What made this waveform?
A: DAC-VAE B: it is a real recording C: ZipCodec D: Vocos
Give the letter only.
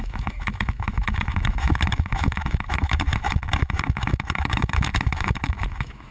A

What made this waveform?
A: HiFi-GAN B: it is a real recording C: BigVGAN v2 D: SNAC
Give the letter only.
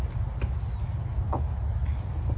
B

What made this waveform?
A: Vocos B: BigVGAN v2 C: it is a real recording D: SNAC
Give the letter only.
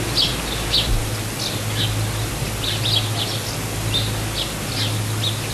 C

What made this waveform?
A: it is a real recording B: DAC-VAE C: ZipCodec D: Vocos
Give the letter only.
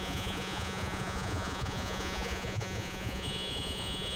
D